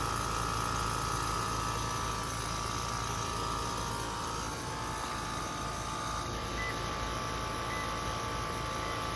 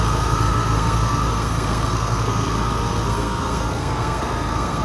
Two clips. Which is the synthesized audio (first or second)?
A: second